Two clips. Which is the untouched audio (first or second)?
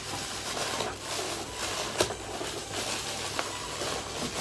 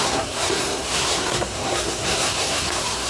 first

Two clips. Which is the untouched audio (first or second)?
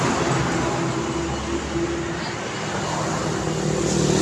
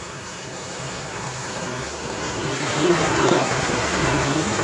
first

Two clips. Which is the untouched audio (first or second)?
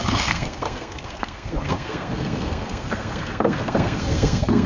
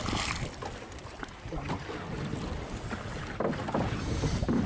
second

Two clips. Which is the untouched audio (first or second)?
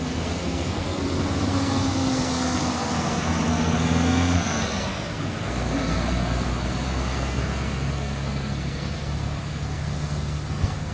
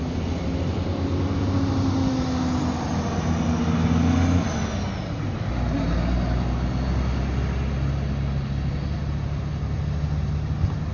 second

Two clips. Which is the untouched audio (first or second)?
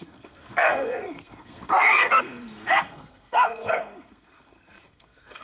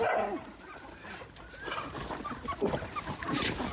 second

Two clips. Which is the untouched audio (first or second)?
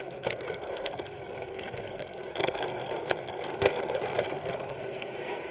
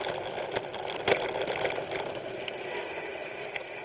second